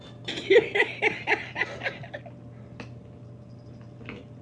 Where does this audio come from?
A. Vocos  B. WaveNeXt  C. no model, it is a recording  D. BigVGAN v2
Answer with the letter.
C